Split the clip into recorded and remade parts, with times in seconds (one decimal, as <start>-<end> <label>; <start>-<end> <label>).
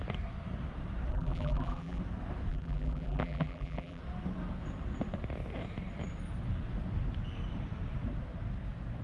0.0-1.1 recorded; 1.1-2.0 remade; 2.0-2.5 recorded; 2.5-4.0 remade; 4.0-9.0 recorded